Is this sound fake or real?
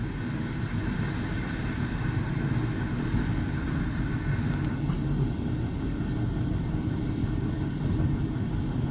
real